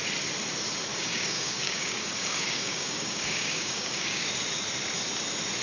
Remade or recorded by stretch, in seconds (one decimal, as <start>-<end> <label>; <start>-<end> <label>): 0.0-0.9 recorded; 0.9-4.3 remade; 4.3-5.6 recorded